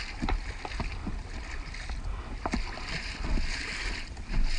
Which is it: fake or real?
real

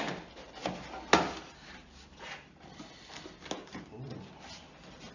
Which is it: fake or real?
real